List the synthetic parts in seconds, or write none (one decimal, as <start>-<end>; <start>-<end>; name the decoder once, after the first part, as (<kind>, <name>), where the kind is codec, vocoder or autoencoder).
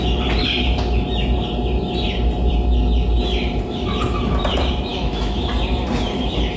4.9-5.5 (autoencoder, DAC-VAE)